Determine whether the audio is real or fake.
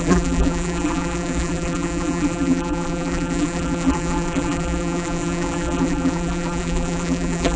fake